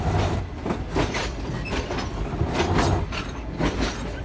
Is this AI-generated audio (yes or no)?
no